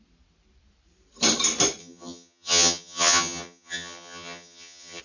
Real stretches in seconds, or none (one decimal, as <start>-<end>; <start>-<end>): 0.0-1.8